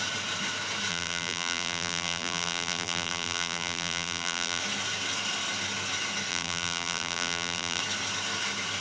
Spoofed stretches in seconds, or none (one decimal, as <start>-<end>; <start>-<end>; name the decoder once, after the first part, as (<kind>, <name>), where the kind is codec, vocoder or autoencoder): 0.9-4.6 (vocoder, BigVGAN v2); 6.3-7.8